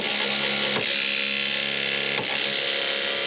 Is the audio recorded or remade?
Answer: recorded